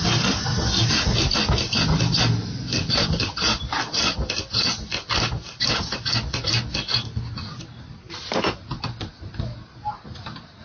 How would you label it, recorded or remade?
recorded